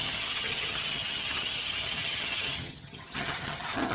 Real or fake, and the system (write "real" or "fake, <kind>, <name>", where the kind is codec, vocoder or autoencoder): fake, vocoder, HiFi-GAN